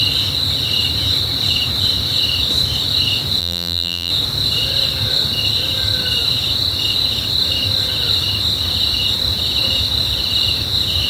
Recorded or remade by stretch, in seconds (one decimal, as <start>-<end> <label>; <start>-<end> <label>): 0.0-3.4 recorded; 3.4-4.1 remade; 4.1-11.1 recorded